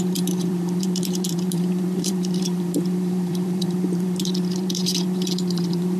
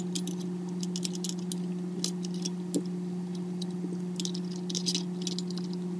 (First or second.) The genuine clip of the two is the second